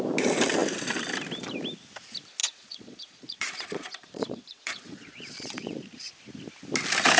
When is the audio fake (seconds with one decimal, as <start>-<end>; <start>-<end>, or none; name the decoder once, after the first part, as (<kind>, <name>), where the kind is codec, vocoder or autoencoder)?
2.4-6.1 (vocoder, Vocos)